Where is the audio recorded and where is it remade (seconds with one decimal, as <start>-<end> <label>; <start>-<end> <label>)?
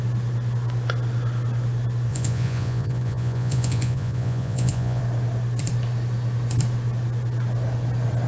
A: 0.0-2.1 recorded; 2.1-5.0 remade; 5.0-8.3 recorded